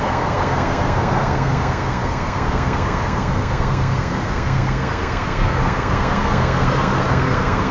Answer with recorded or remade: remade